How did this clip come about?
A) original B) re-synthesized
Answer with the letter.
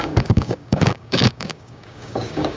B